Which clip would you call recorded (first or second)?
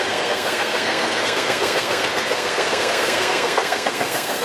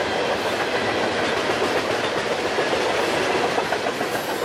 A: second